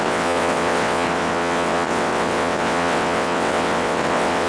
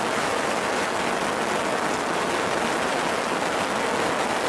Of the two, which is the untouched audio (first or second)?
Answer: second